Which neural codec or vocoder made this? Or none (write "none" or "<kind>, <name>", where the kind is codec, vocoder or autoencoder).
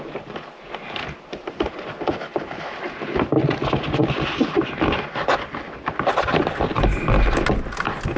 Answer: none